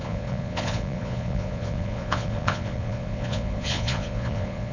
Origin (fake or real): fake